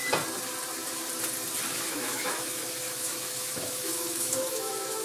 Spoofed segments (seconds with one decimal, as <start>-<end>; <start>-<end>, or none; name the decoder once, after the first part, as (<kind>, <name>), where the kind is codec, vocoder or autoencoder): 1.7-5.0 (autoencoder, DAC-VAE)